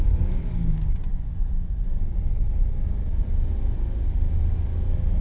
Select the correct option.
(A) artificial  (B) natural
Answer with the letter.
B